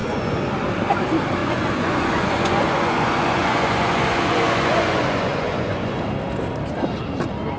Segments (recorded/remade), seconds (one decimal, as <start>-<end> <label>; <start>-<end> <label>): 0.0-0.5 remade; 0.5-1.4 recorded; 1.4-6.0 remade; 6.0-7.6 recorded